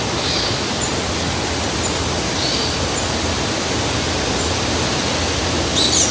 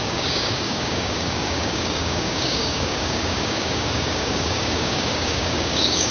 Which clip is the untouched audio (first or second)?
first